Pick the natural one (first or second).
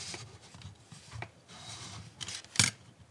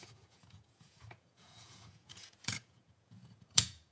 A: first